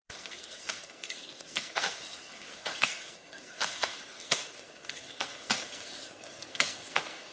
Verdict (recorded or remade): remade